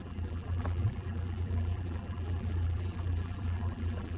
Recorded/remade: remade